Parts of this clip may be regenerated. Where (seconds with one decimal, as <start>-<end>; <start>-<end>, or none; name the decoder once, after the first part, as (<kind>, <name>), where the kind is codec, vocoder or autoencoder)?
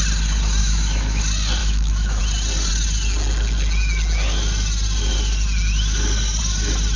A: 0.6-1.2 (autoencoder, DAC-VAE); 1.6-2.2